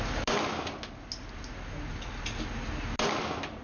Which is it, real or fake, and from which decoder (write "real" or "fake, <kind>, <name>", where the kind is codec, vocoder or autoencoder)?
real